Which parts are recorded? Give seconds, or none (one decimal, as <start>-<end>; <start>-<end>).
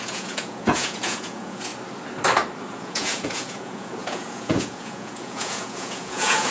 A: 1.7-2.7